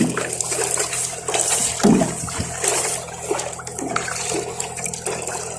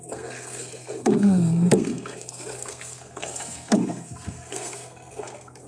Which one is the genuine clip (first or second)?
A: first